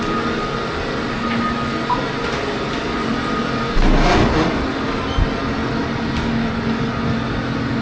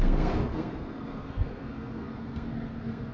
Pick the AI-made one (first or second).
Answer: second